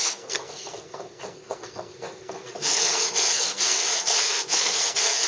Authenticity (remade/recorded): remade